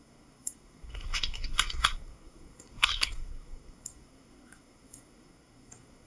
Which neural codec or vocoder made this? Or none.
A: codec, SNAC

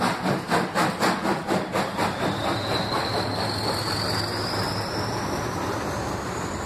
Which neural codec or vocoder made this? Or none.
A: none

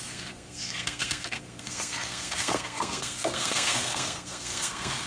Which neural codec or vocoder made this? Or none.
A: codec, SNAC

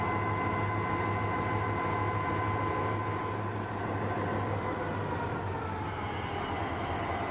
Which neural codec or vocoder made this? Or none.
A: none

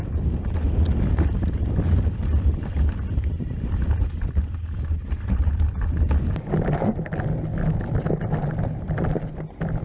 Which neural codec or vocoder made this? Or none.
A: none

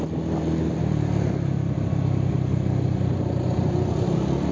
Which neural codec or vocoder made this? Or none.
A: none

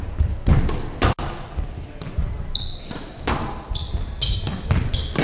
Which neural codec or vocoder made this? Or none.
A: none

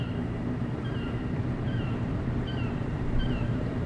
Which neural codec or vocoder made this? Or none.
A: vocoder, BigVGAN v2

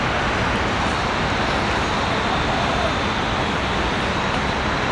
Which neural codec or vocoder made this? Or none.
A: none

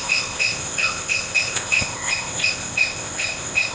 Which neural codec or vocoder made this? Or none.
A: codec, ZipCodec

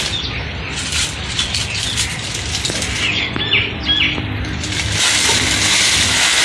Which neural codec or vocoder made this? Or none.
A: none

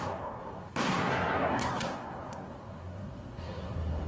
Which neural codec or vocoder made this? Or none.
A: codec, SNAC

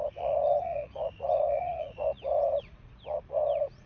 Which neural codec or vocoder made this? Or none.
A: vocoder, Vocos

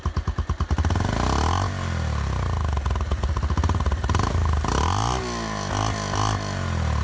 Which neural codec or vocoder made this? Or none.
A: none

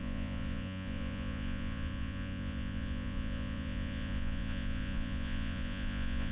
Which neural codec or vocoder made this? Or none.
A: vocoder, Vocos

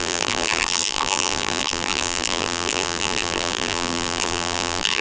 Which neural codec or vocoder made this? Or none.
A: vocoder, BigVGAN v2